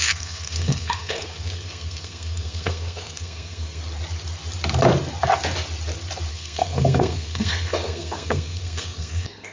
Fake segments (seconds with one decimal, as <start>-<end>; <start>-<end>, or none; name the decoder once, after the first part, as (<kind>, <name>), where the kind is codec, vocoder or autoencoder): 0.0-3.8 (codec, SNAC); 6.3-9.5